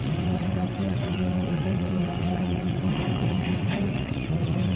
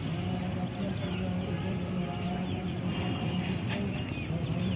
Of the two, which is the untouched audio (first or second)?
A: second